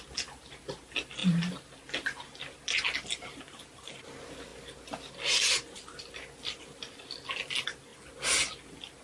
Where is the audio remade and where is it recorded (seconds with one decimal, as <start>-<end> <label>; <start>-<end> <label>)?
0.0-9.0 recorded